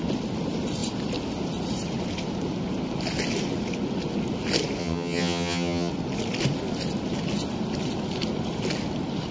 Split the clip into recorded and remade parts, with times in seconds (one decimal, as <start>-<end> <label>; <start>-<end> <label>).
0.0-4.8 recorded; 4.8-5.9 remade; 5.9-9.3 recorded